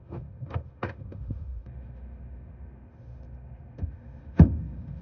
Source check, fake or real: fake